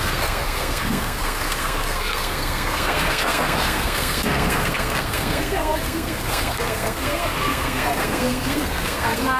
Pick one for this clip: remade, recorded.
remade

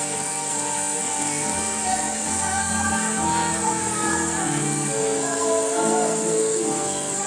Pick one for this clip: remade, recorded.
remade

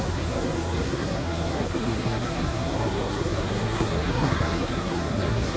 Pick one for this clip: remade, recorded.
remade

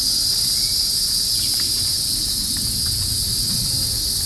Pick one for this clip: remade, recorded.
recorded